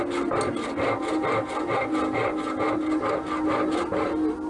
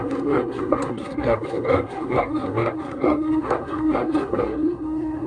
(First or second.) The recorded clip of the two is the first